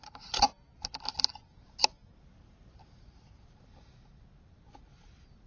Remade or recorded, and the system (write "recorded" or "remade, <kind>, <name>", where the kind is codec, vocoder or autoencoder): recorded